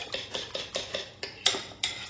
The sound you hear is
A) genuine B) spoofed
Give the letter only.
A